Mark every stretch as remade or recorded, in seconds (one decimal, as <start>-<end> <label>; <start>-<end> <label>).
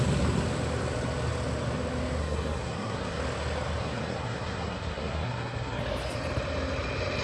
0.0-2.2 recorded; 2.2-3.2 remade; 3.2-3.8 recorded; 3.8-5.8 remade; 5.8-7.2 recorded